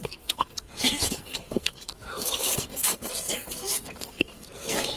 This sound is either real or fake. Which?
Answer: fake